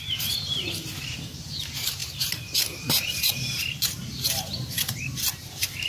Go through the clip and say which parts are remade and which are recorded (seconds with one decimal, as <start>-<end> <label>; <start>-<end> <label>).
0.0-5.9 remade